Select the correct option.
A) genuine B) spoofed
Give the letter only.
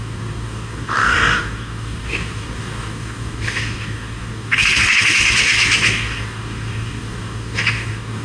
B